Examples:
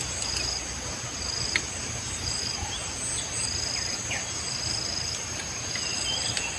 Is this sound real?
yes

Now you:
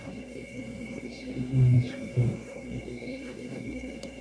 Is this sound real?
no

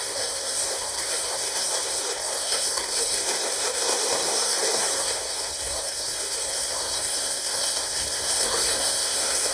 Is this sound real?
no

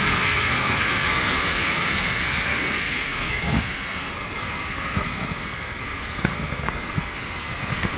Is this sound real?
no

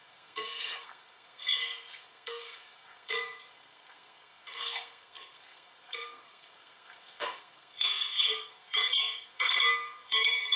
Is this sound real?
no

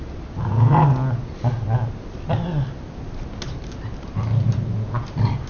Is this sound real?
yes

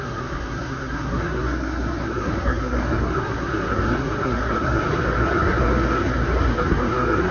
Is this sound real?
no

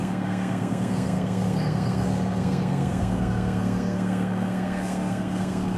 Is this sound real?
no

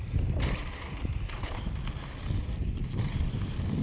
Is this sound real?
yes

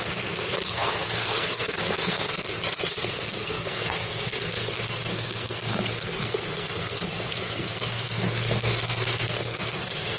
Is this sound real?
no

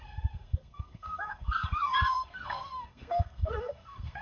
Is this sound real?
no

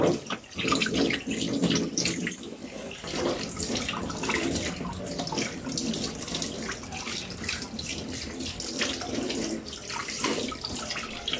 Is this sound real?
yes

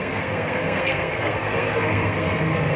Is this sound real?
no